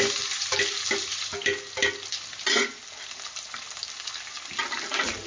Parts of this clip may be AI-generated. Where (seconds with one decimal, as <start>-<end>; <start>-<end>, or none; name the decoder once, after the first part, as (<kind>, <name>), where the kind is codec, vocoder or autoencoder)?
none